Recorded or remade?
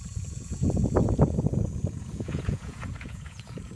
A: remade